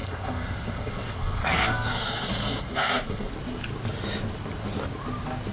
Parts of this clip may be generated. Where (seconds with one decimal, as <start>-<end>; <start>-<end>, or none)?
0.0-3.3